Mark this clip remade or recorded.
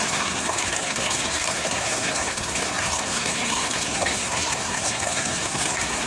remade